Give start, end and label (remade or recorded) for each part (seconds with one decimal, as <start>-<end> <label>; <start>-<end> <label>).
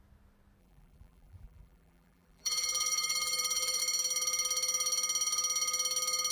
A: 0.0-0.6 recorded; 0.6-3.8 remade; 3.8-6.3 recorded